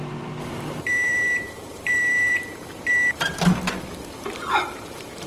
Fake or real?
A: fake